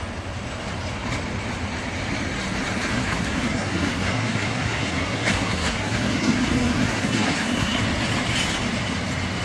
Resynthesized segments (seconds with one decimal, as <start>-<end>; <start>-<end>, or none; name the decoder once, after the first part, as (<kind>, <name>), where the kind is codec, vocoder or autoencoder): 2.9-7.8 (codec, SNAC)